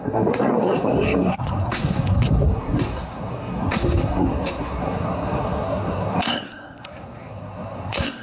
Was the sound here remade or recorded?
remade